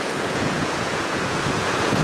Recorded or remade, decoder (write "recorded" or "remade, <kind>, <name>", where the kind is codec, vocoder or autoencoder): remade, vocoder, Vocos